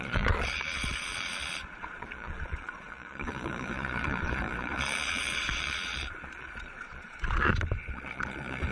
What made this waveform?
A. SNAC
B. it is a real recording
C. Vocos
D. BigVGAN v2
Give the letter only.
C